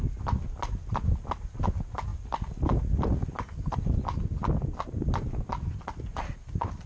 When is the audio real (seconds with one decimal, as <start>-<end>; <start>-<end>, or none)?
0.0-6.9